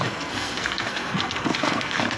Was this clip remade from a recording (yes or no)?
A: yes